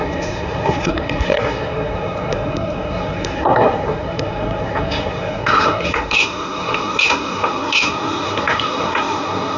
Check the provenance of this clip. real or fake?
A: fake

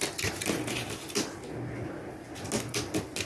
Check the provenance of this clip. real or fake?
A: real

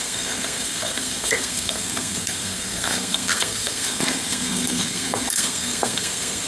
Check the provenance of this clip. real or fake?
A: fake